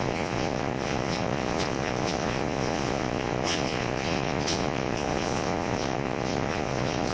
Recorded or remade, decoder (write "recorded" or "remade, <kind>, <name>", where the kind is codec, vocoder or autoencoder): remade, vocoder, Vocos